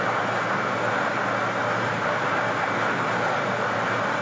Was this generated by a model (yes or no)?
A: no